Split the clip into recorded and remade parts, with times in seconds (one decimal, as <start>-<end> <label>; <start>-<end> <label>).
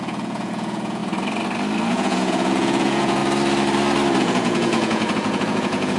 0.0-1.0 remade; 1.0-1.9 recorded; 1.9-3.2 remade; 3.2-4.2 recorded; 4.2-6.0 remade